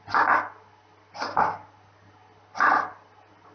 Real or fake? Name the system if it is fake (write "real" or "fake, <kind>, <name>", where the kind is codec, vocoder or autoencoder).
real